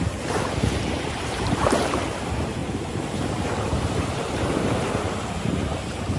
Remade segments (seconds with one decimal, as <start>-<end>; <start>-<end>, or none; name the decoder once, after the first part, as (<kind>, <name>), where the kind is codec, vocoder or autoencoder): 0.0-6.2 (vocoder, BigVGAN v2)